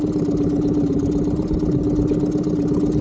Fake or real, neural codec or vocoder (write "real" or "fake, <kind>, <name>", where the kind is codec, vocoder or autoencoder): real